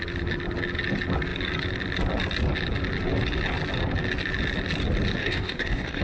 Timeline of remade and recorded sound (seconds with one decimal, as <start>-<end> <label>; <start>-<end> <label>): 0.0-5.2 recorded; 5.2-6.0 remade